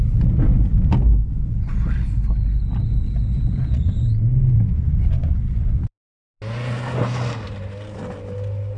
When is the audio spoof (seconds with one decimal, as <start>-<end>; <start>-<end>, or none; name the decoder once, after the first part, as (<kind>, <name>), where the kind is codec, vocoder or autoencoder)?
4.7-5.9 (vocoder, Vocos)